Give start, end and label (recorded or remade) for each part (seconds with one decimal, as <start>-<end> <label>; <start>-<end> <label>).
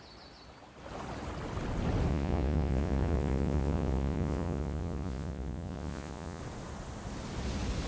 0.0-2.1 recorded; 2.1-6.4 remade; 6.4-7.9 recorded